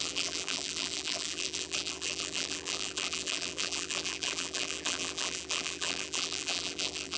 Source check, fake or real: fake